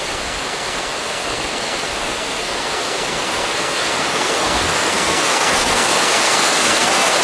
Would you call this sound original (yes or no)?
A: no